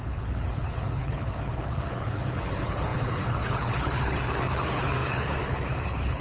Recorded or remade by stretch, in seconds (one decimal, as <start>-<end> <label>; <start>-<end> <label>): 0.0-6.2 remade